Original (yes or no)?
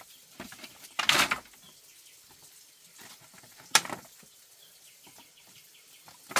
yes